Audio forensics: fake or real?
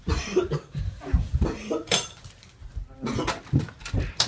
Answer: fake